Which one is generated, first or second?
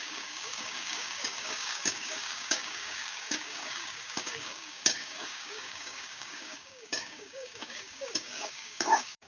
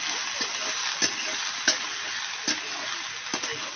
first